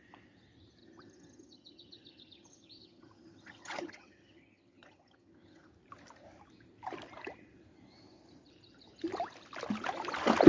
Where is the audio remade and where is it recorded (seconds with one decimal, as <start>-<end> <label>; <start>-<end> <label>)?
0.0-0.8 recorded; 0.8-5.7 remade; 5.7-10.5 recorded